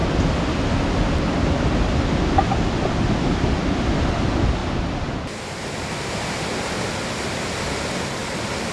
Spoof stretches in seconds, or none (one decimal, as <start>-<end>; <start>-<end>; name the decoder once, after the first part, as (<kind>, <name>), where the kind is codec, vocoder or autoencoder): none